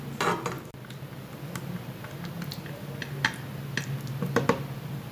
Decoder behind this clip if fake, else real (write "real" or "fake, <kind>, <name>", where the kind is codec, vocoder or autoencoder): real